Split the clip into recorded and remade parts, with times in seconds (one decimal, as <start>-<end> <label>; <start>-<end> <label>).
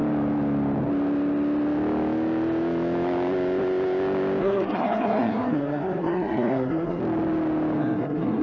0.0-4.4 recorded; 4.4-7.0 remade; 7.0-7.8 recorded; 7.8-8.4 remade